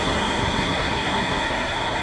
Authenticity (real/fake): fake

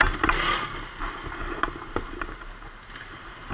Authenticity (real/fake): real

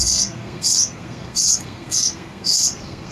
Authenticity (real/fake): fake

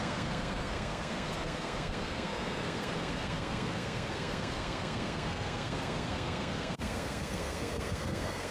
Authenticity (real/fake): fake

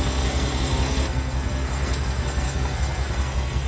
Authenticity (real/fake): fake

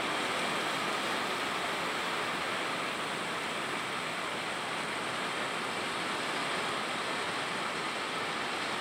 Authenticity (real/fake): real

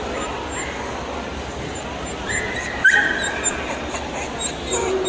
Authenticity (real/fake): real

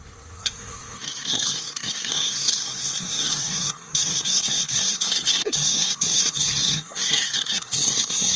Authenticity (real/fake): fake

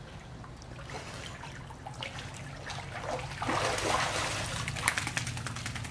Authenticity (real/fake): real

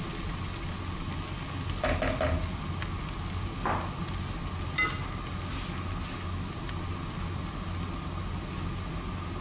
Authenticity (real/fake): real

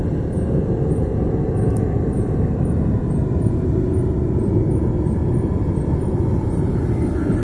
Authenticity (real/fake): real